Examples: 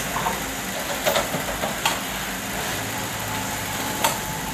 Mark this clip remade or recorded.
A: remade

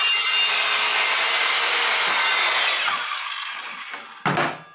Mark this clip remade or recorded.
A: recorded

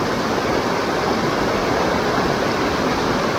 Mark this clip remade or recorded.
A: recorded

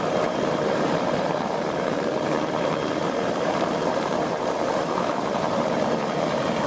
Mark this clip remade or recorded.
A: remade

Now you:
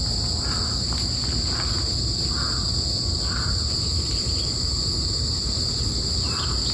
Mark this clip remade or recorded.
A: recorded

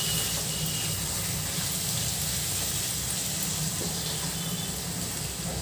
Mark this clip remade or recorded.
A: recorded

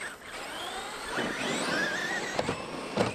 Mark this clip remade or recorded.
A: recorded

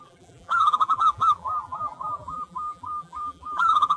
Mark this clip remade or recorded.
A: remade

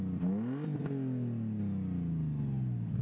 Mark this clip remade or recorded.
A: recorded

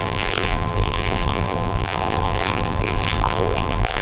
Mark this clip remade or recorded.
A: remade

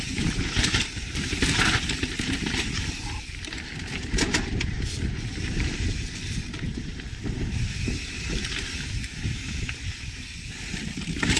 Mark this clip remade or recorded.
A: remade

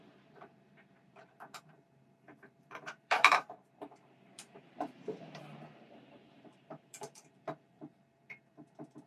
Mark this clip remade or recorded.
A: remade